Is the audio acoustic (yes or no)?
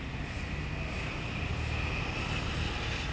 yes